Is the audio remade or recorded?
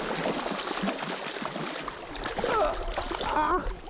recorded